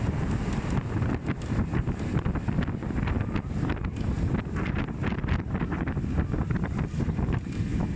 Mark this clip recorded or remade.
recorded